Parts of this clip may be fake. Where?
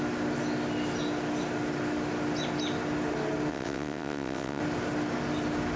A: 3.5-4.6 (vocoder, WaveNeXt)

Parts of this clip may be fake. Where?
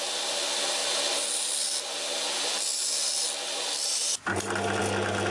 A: none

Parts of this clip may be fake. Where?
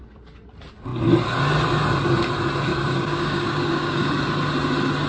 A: 2.7-4.1 (codec, DAC)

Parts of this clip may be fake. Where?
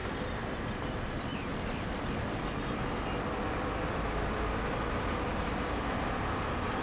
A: none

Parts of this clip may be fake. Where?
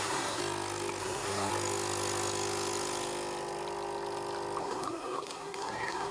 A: 0.0-0.4 (codec, SNAC); 1.0-1.5; 4.6-6.1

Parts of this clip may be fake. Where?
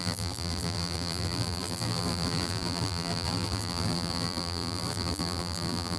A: 0.0-6.0 (vocoder, BigVGAN v2)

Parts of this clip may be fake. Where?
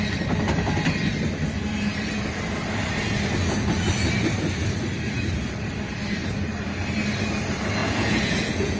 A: 7.8-8.8 (vocoder, Vocos)